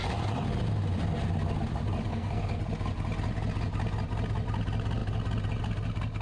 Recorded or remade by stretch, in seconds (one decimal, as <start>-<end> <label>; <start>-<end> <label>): 0.0-2.1 recorded; 2.1-2.6 remade; 2.6-6.2 recorded